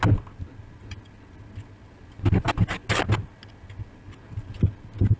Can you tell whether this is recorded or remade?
recorded